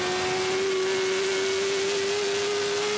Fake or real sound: real